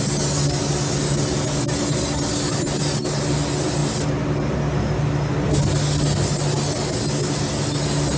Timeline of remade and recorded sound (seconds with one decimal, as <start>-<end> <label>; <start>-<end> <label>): 0.0-8.2 recorded